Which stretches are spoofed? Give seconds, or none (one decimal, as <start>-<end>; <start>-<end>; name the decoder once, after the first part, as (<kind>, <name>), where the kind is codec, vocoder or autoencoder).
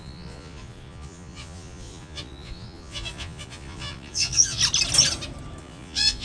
0.0-4.6 (vocoder, Vocos); 5.6-6.2